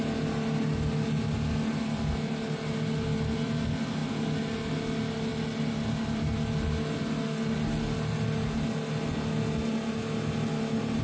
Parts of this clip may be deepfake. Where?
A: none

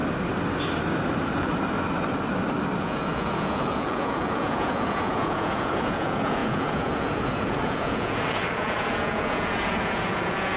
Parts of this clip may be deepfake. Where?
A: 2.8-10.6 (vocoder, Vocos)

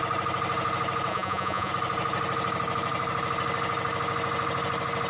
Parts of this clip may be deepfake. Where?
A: 1.1-1.7 (vocoder, Vocos)